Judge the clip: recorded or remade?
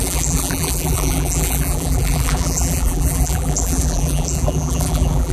remade